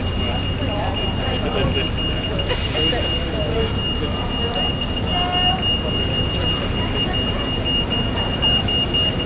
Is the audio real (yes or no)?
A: yes